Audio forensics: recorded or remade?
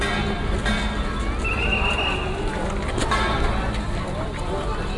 recorded